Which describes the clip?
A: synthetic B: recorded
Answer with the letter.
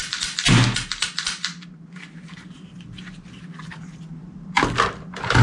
B